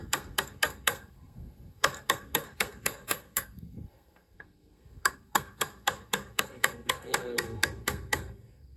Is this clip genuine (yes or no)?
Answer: no